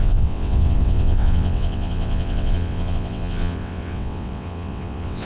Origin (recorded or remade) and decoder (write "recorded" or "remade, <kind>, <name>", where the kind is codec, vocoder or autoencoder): remade, vocoder, WaveNeXt